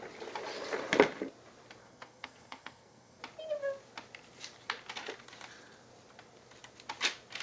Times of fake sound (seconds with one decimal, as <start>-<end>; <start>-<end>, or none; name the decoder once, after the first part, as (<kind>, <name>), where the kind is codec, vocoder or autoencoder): 1.8-3.2 (codec, SNAC)